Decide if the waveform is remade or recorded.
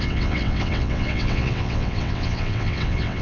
remade